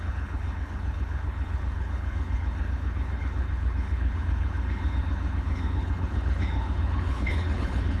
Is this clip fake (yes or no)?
yes